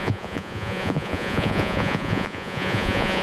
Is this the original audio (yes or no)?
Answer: no